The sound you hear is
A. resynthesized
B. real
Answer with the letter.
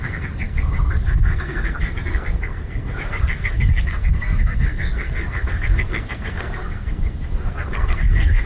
A